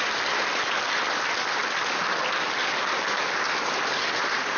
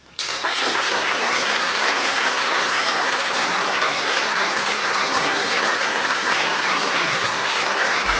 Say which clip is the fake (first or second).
second